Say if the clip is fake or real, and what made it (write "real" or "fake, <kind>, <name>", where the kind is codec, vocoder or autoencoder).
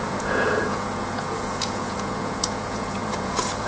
fake, vocoder, Vocos